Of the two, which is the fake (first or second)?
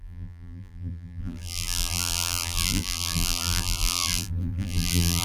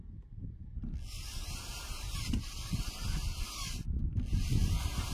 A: first